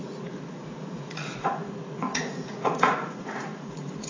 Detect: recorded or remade remade